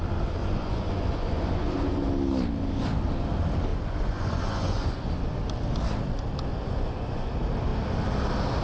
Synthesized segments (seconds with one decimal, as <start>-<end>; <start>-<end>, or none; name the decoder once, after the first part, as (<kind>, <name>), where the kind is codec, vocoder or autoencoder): 0.4-2.0 (vocoder, Vocos); 3.7-5.1; 6.5-7.3

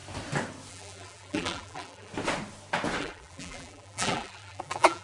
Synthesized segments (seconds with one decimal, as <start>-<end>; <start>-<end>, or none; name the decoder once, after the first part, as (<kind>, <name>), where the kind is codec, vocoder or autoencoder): 0.7-2.1 (vocoder, BigVGAN v2); 3.0-5.0